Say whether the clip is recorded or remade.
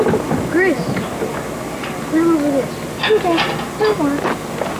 recorded